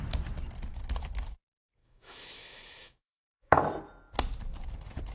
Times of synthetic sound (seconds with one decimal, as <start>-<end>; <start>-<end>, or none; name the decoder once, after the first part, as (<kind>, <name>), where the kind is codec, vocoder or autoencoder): 1.8-3.6 (autoencoder, DAC-VAE)